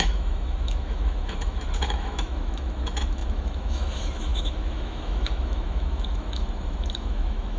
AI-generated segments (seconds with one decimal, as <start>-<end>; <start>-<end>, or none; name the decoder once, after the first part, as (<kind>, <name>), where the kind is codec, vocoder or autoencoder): 0.0-7.6 (autoencoder, DAC-VAE)